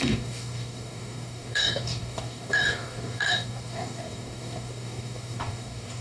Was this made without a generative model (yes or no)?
no